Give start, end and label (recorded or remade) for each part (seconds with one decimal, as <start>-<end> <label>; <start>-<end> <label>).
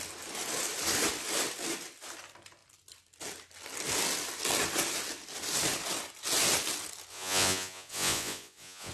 0.0-7.1 recorded; 7.1-8.9 remade